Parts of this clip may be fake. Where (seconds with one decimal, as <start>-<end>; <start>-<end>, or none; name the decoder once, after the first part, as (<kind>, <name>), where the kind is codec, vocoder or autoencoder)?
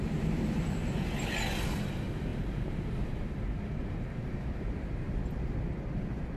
2.3-5.1 (vocoder, BigVGAN v2)